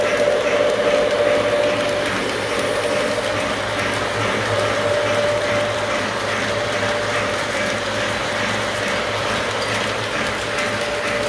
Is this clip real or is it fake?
real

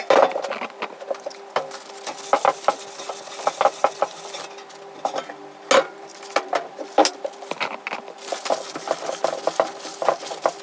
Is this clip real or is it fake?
real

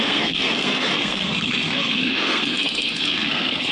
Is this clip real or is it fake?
fake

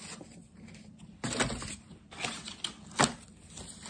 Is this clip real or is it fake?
real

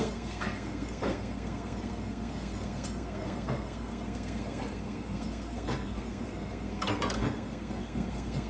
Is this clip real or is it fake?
fake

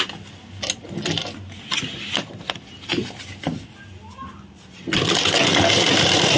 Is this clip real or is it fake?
real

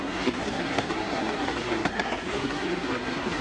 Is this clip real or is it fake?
fake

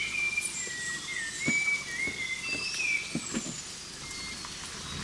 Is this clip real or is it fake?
real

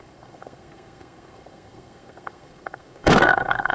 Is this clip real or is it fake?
fake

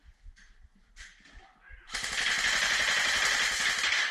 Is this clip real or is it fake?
real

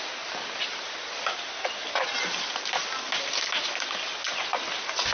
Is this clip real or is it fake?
real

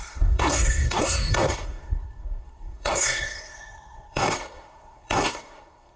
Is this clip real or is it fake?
fake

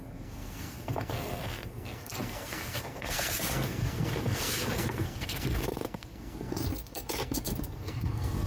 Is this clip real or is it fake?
fake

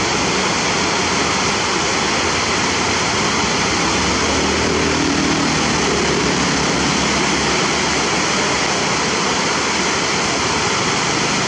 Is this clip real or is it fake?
real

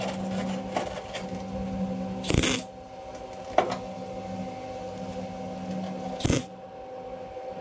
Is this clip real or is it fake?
real